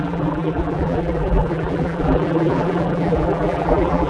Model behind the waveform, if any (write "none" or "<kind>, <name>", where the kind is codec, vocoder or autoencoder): vocoder, BigVGAN v2